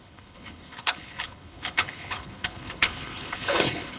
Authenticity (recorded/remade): remade